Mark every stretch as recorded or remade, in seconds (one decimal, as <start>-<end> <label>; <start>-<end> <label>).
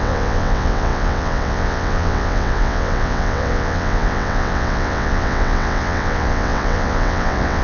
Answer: 0.0-7.6 remade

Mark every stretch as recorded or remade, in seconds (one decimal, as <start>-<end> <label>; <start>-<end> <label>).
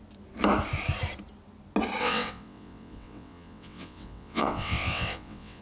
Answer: 0.0-2.0 recorded; 2.0-5.6 remade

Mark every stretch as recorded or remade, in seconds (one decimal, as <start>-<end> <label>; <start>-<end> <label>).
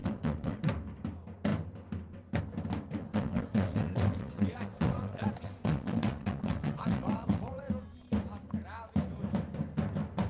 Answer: 0.0-0.7 remade; 0.7-3.0 recorded; 3.0-7.7 remade; 7.7-10.3 recorded